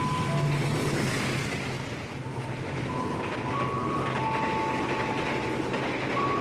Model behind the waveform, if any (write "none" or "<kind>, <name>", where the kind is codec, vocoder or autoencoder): none